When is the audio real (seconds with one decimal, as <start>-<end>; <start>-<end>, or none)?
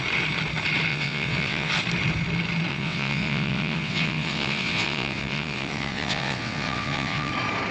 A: 0.0-0.9; 1.7-2.7; 7.3-7.7